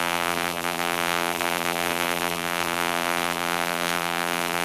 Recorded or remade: remade